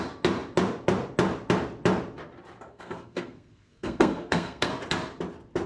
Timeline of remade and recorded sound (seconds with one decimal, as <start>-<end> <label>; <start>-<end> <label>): 0.0-2.7 recorded; 2.7-4.7 remade; 4.7-5.7 recorded